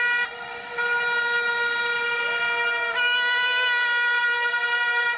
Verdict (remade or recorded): recorded